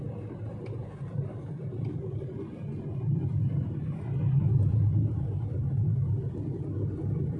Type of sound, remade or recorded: recorded